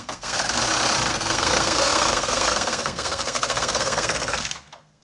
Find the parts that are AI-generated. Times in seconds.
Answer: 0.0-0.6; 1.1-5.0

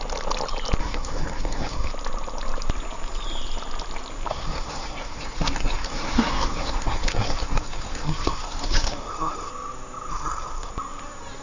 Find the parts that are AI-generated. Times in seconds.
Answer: 0.8-1.9; 4.3-9.5; 10.1-10.7